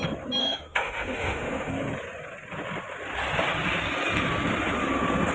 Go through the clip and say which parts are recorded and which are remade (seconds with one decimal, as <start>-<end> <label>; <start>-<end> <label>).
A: 0.0-0.4 recorded; 0.4-1.7 remade; 1.7-5.3 recorded